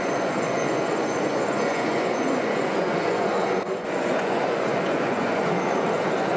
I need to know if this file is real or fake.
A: fake